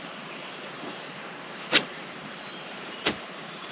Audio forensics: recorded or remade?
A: remade